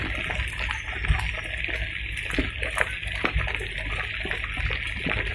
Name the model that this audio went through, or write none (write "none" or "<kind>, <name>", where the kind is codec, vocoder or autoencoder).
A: none